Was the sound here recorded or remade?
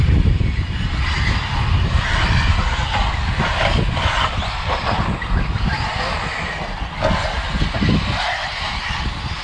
recorded